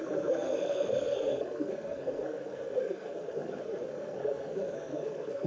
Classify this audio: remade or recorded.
remade